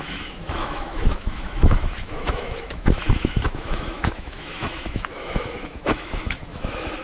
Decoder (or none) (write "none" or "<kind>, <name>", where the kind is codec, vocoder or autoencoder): autoencoder, DAC-VAE